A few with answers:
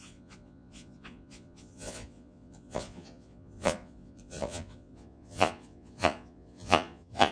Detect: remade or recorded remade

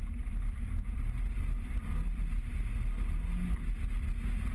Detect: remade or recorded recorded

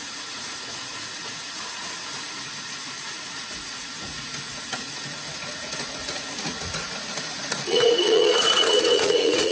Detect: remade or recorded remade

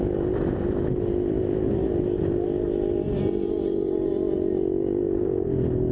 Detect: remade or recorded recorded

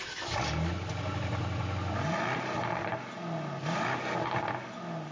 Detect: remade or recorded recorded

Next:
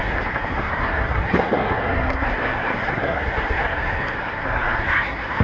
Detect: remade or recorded remade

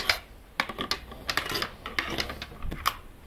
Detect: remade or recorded recorded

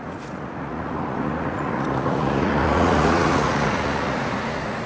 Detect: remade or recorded remade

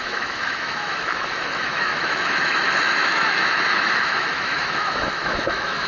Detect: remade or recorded remade